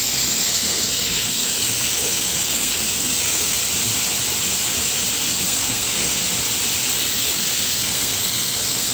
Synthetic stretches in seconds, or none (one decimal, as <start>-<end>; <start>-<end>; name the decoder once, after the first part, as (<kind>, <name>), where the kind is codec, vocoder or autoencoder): 0.0-3.6 (codec, SNAC); 5.2-6.2; 7.2-8.9